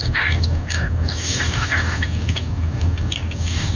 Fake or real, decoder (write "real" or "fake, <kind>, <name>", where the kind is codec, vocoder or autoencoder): fake, codec, DAC